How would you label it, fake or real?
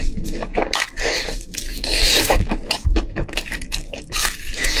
fake